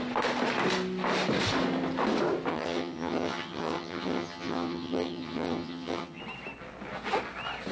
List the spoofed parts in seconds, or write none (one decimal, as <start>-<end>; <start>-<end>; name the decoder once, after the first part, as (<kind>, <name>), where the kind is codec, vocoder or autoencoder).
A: 2.5-6.2 (vocoder, HiFi-GAN)